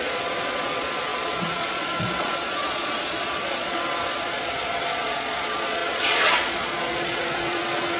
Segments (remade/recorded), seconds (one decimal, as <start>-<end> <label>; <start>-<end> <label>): 0.0-8.0 remade